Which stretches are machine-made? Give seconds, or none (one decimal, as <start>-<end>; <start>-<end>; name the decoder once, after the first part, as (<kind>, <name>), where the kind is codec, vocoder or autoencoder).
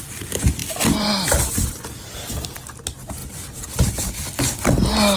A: 3.2-4.4 (vocoder, BigVGAN v2)